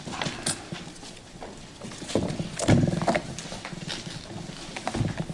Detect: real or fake real